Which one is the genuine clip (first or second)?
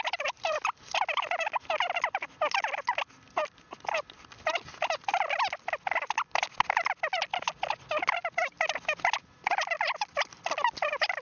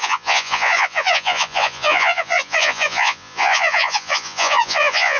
first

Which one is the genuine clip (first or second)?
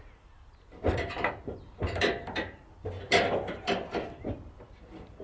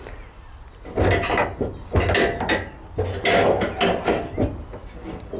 second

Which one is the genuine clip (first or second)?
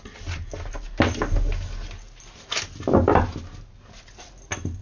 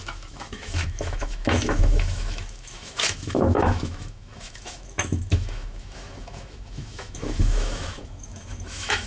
first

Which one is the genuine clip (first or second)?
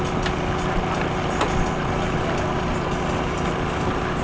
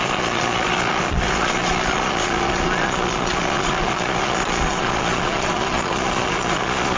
first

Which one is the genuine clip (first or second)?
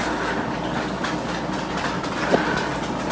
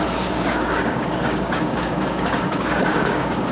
first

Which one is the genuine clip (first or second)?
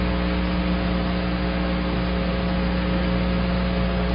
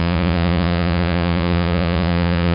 first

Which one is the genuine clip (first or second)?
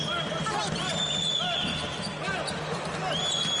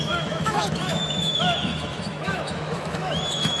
first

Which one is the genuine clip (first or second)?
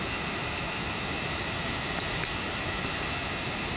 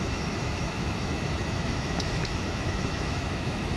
first